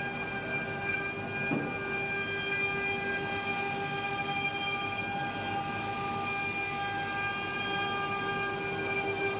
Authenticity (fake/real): real